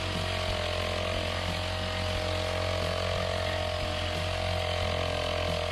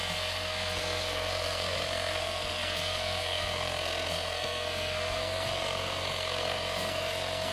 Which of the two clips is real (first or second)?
first